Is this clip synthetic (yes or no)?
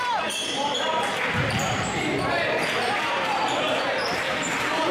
yes